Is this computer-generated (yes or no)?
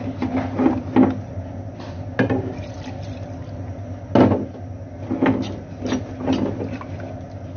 no